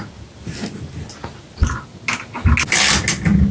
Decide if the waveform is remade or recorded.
recorded